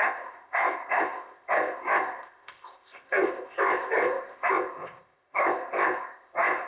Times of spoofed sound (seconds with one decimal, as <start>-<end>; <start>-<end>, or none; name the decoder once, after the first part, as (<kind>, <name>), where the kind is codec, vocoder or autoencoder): 0.0-6.7 (codec, ZipCodec)